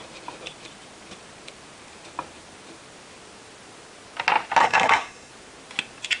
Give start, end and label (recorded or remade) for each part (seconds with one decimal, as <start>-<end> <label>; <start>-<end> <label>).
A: 0.0-4.6 recorded; 4.6-5.3 remade; 5.3-6.2 recorded